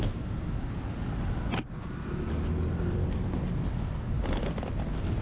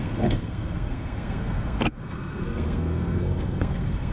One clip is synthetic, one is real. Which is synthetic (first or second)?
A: second